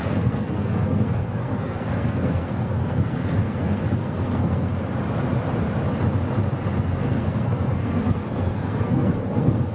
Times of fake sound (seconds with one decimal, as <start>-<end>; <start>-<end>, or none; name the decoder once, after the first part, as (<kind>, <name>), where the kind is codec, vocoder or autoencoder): 0.0-4.7 (codec, SNAC); 6.8-9.7